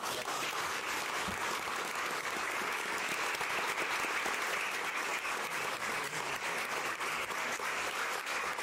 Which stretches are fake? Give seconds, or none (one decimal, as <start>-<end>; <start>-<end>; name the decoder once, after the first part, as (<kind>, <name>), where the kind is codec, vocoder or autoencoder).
0.0-3.1 (codec, DAC); 4.6-8.6